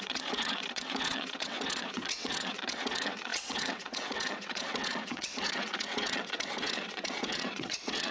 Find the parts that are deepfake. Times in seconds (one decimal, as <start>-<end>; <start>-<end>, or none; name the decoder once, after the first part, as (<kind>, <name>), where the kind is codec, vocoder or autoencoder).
0.0-8.1 (vocoder, WaveNeXt)